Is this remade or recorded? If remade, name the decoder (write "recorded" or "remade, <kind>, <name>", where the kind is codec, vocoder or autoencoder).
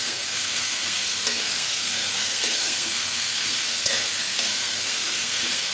remade, codec, SNAC